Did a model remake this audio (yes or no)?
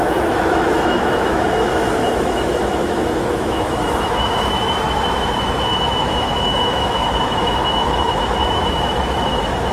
yes